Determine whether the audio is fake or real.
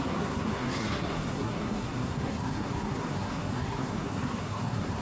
fake